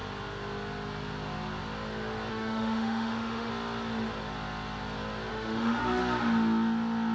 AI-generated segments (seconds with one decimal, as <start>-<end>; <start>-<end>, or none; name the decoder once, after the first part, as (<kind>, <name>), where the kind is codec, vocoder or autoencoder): 2.3-3.5 (autoencoder, DAC-VAE); 5.3-6.0